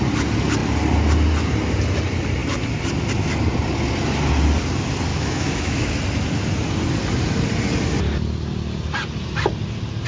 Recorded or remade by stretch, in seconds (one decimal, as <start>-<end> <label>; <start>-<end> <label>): 0.0-5.1 recorded; 5.1-5.9 remade; 5.9-10.1 recorded